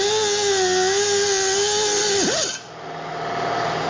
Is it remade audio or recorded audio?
recorded